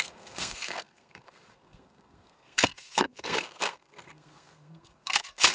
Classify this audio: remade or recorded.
remade